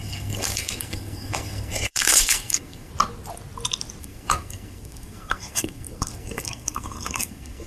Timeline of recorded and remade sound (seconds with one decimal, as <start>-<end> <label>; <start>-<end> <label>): 0.0-2.9 remade; 2.9-4.0 recorded; 4.0-7.7 remade